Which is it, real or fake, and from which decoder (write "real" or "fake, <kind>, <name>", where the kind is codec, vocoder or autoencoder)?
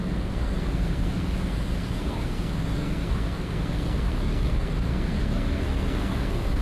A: fake, codec, SNAC